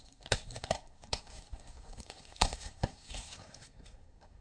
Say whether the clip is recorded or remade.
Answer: remade